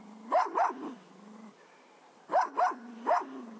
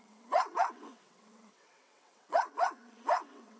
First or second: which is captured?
first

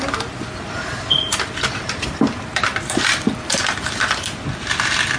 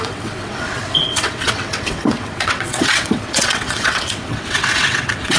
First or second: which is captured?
first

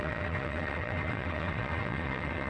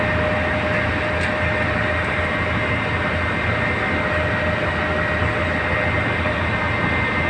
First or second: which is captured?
second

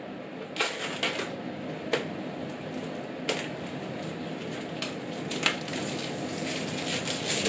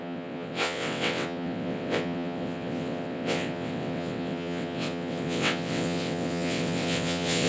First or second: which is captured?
first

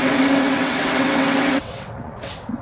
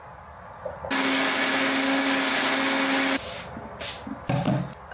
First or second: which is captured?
second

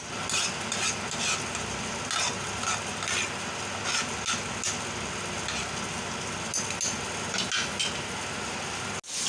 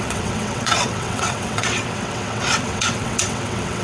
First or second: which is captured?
first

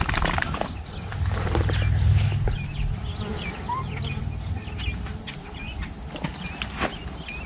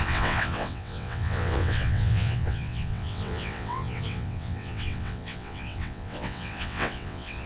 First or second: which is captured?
first